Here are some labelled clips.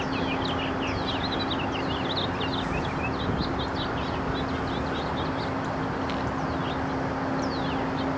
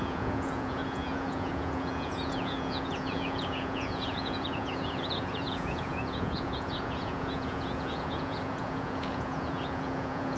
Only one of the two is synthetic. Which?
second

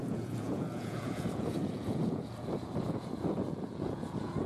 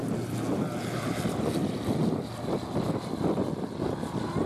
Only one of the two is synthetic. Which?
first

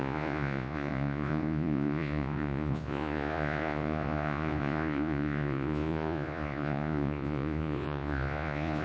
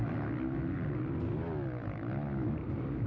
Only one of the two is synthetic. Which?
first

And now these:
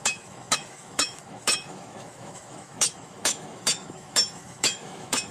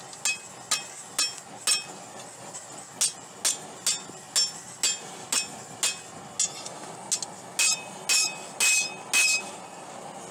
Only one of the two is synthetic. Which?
first